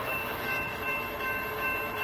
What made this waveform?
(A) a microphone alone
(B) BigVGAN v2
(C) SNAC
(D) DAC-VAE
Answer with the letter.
D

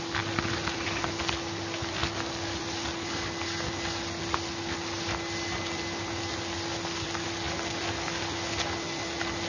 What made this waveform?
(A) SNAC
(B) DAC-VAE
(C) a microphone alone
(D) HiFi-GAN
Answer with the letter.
C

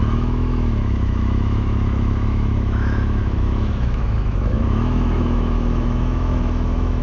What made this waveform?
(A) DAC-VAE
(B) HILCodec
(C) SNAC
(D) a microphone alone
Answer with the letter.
A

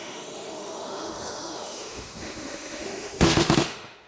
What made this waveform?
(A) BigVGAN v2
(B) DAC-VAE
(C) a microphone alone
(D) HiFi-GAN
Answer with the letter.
B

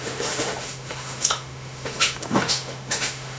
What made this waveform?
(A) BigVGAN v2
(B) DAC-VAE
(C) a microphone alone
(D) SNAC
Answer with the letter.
B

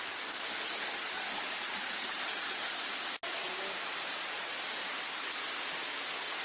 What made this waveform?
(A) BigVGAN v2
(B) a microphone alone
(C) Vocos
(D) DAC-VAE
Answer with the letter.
B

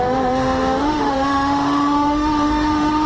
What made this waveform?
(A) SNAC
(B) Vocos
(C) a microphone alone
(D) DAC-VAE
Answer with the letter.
D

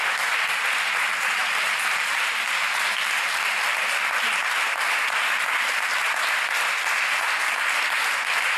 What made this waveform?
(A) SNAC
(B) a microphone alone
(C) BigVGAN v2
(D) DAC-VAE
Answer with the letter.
B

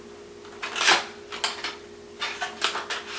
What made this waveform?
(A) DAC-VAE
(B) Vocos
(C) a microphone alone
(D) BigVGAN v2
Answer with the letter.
C